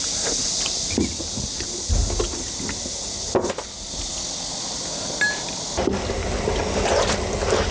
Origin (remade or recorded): recorded